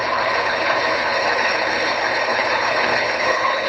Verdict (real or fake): fake